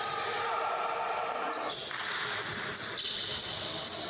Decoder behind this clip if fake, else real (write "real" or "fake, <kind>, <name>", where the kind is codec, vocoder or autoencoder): real